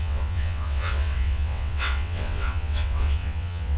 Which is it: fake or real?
fake